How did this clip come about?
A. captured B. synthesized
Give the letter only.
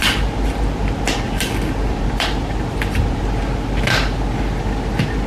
A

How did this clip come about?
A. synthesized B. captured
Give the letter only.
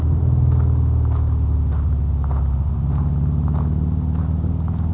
B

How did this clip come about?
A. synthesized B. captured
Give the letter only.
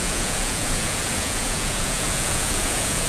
A